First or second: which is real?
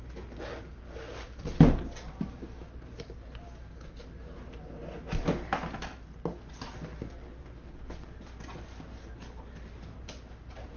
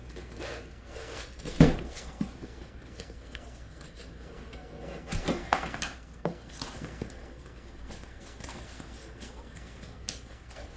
first